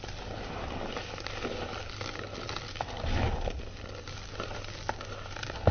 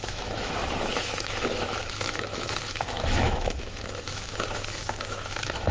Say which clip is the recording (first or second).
first